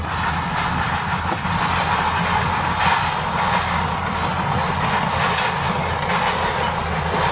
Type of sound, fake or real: real